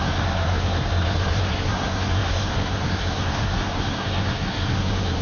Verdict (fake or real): fake